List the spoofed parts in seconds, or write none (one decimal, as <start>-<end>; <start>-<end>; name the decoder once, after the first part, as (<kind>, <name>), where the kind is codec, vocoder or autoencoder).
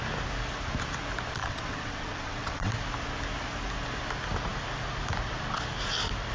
1.4-2.7 (vocoder, WaveNeXt)